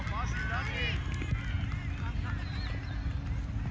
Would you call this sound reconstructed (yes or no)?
no